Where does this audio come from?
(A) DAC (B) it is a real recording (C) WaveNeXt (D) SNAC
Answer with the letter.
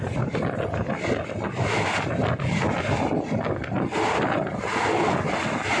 B